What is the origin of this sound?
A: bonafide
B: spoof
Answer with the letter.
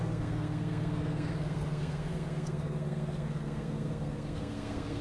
B